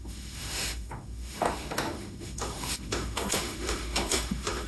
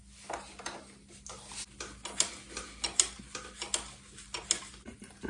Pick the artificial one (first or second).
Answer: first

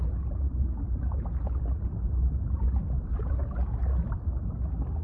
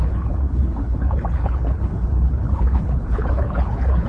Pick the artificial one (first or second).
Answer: second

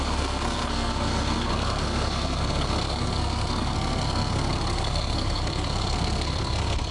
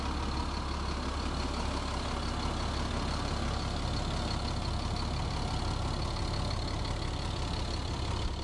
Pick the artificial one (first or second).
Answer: first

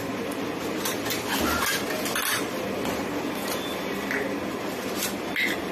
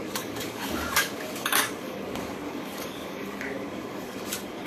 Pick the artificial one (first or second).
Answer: second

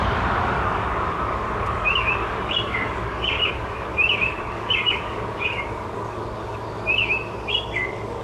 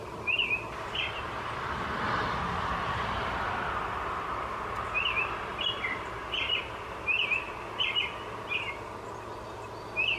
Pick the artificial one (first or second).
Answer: first